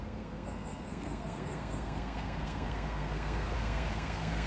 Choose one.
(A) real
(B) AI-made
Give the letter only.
B